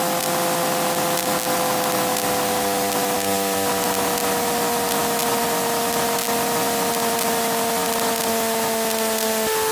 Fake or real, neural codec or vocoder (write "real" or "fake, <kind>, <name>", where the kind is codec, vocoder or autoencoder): real